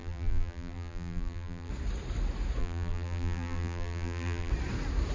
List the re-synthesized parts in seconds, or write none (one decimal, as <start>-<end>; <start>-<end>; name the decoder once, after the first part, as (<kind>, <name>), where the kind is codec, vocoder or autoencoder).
0.0-1.7 (vocoder, BigVGAN v2); 2.6-4.5